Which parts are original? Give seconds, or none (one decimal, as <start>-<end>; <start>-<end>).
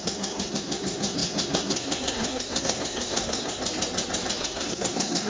3.6-4.4